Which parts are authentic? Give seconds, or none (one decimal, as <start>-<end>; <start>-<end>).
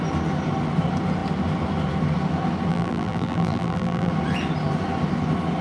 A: 0.0-2.7; 4.1-5.6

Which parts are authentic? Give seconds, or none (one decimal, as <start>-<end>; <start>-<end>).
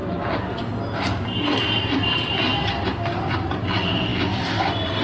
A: 0.0-5.0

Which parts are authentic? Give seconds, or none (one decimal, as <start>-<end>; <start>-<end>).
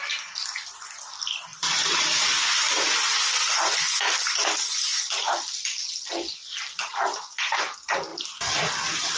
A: 0.0-1.5; 3.5-4.9; 7.3-8.1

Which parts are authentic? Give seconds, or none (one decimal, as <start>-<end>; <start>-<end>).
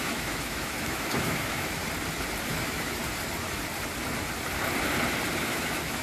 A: 1.8-2.5; 3.0-5.4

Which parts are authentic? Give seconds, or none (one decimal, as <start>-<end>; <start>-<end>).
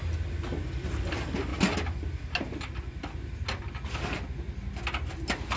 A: 0.0-5.6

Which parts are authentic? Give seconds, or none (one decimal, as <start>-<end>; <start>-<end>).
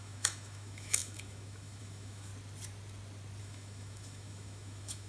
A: 2.3-3.4